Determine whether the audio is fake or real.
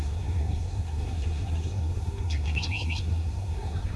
fake